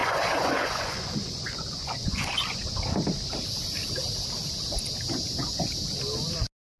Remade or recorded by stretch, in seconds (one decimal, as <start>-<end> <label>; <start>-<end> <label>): 0.0-2.6 remade; 2.6-6.8 recorded